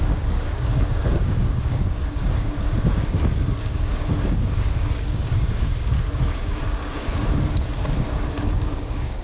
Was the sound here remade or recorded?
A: remade